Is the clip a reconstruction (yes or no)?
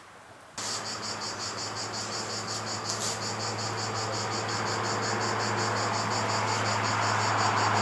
no